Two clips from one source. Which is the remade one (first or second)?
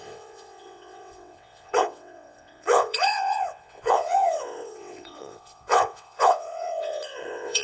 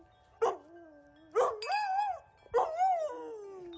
first